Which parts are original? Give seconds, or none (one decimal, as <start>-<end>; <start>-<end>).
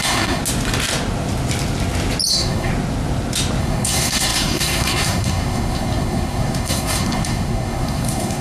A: 0.4-2.3; 2.7-3.6